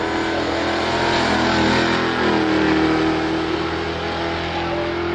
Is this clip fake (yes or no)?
no